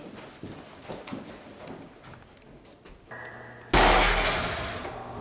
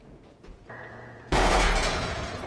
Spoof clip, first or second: second